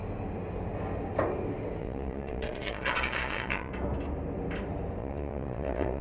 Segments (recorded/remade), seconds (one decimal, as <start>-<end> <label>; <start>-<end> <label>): 0.0-1.8 recorded; 1.8-3.7 remade; 3.7-5.0 recorded; 5.0-6.0 remade